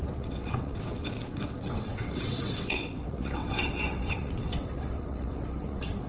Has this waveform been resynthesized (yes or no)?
yes